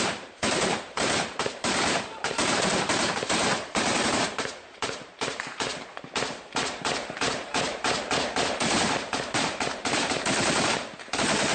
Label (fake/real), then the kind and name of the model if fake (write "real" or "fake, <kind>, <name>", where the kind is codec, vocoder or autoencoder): fake, vocoder, BigVGAN v2